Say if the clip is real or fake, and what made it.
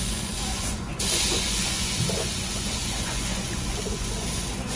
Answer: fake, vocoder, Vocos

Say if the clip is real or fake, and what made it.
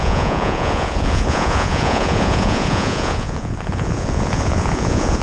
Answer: fake, vocoder, Vocos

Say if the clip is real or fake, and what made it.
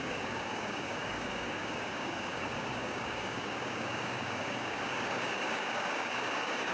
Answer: fake, codec, DAC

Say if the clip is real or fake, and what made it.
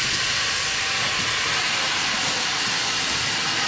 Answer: real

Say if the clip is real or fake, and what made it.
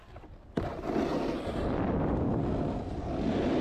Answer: real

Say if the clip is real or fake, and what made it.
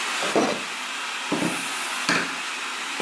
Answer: real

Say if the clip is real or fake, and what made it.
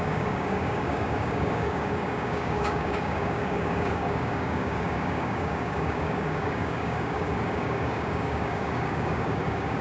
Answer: fake, codec, DAC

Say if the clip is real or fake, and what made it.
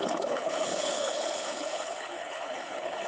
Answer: fake, codec, HILCodec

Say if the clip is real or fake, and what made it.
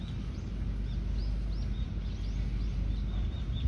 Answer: real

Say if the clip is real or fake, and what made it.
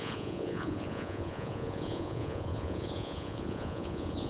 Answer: fake, vocoder, Vocos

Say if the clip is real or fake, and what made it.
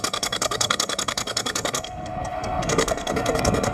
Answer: fake, codec, SNAC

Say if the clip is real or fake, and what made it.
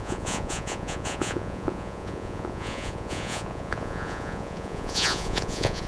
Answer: fake, vocoder, Vocos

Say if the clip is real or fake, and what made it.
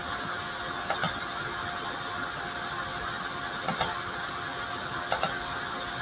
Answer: real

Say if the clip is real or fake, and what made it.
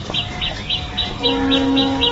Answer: fake, codec, DAC